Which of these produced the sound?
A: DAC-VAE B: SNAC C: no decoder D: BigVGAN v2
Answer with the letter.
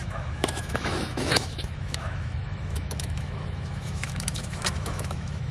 A